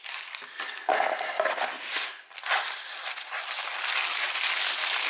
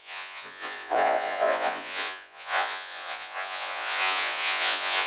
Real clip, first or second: first